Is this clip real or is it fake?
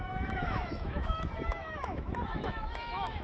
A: fake